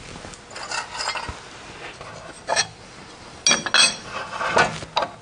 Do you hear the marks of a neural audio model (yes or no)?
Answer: no